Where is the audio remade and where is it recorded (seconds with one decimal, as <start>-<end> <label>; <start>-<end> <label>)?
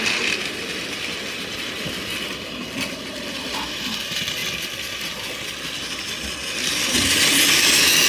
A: 0.0-2.6 recorded; 2.6-3.4 remade; 3.4-8.1 recorded